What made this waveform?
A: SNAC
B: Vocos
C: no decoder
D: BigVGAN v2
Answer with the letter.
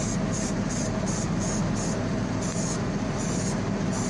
C